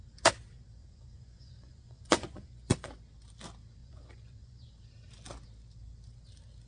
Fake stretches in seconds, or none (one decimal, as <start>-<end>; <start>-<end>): 0.8-2.9; 3.8-4.7

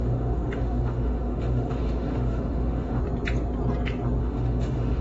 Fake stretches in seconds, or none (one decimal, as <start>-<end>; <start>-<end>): 0.0-3.0; 4.2-5.0

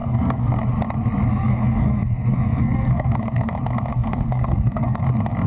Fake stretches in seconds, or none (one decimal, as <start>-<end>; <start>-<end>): 0.0-0.6; 1.3-3.5; 3.9-5.0

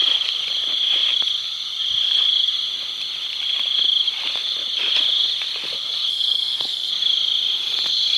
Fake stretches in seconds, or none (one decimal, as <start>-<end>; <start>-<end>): 6.1-6.9

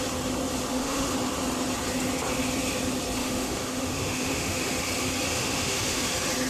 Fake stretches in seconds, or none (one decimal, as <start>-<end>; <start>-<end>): 0.7-1.2; 3.2-4.7; 5.4-6.1

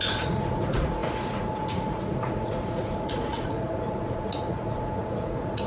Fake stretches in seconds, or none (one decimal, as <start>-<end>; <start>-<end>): 0.0-5.7

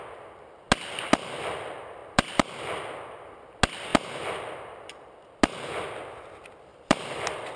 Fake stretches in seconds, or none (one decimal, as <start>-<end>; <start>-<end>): 2.0-2.6; 6.7-7.6